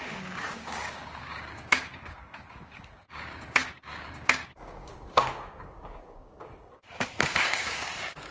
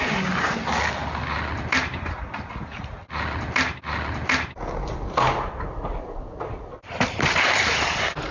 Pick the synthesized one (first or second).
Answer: first